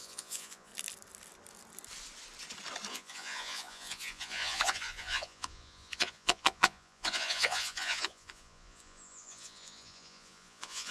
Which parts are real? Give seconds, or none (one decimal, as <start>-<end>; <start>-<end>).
0.7-2.9